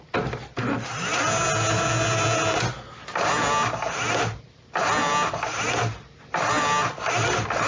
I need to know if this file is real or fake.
real